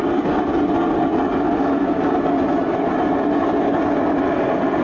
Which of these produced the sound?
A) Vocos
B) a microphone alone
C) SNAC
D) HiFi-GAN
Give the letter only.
B